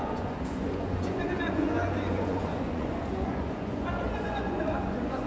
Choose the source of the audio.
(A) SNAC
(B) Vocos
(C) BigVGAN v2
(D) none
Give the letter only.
B